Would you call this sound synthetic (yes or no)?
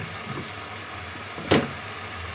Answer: no